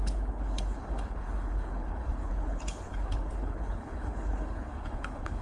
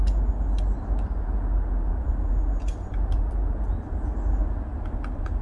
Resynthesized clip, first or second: first